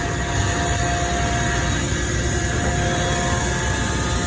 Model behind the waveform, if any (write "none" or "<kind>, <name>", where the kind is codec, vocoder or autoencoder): none